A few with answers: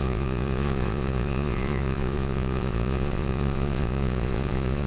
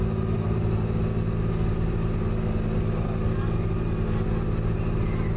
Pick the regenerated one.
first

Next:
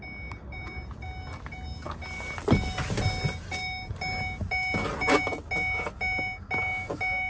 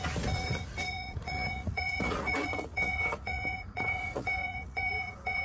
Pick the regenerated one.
second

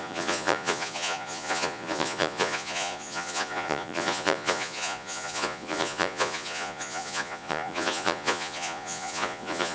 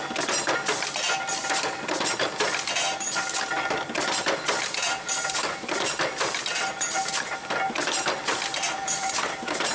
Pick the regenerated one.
first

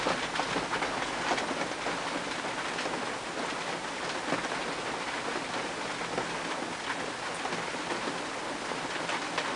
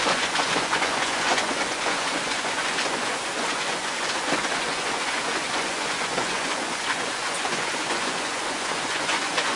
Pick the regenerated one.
second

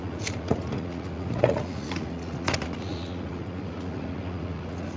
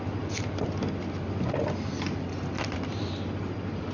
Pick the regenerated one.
first